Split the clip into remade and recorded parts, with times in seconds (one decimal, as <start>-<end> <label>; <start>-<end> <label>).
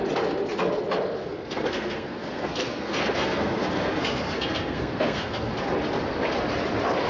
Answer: 0.0-1.2 recorded; 1.2-5.5 remade; 5.5-7.1 recorded